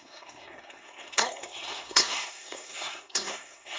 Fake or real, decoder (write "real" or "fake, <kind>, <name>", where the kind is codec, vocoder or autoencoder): fake, codec, SNAC